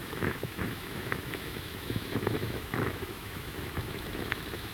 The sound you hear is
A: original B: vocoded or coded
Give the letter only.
B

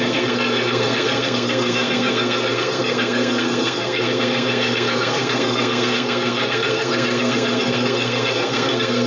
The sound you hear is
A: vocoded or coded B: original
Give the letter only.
A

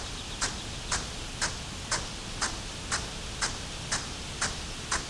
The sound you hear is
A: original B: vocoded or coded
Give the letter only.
A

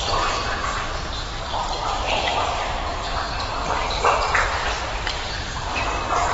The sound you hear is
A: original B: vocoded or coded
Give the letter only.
B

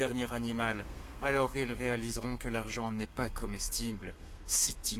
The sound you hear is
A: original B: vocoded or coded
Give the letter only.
B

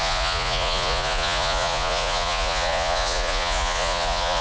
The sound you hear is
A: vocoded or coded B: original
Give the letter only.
A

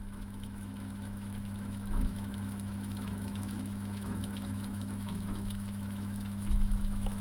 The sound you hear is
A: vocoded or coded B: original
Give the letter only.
A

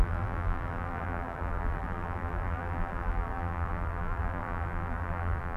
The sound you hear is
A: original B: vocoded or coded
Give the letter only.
B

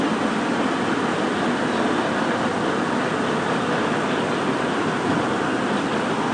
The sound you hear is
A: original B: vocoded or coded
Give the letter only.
A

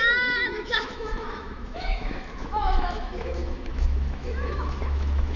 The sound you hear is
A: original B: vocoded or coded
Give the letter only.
B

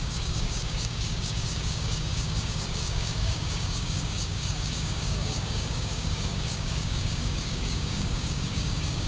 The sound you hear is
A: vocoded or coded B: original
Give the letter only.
A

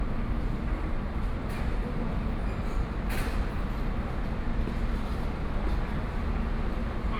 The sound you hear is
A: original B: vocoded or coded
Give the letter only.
A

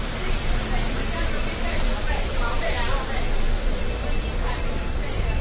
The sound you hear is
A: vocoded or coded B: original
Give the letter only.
A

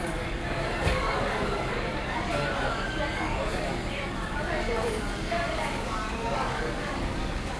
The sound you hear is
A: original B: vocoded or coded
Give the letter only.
B